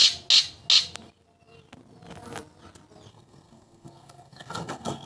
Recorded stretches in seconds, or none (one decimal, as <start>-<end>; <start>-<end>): 0.0-3.1